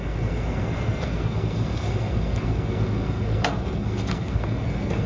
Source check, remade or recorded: remade